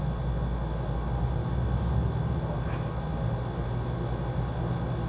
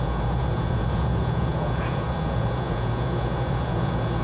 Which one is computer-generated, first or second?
second